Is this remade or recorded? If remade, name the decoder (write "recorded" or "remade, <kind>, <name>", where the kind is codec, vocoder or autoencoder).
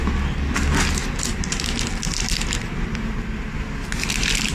recorded